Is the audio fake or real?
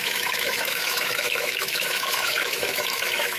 fake